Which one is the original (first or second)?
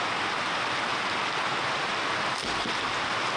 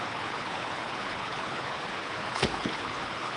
first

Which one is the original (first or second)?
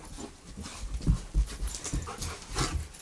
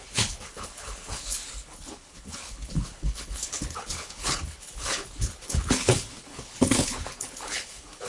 first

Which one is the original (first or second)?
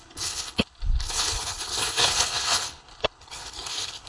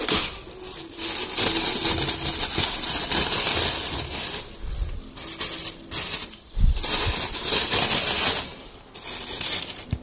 second